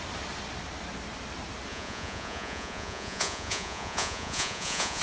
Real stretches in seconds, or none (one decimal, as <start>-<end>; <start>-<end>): 0.0-1.7